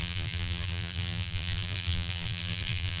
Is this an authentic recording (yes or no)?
no